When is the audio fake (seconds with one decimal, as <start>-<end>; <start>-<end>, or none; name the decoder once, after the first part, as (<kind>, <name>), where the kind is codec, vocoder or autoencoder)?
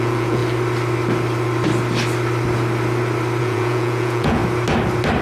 0.0-0.4 (vocoder, Vocos); 3.4-4.4